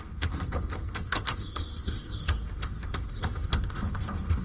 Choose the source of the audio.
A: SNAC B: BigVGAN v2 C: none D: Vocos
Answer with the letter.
A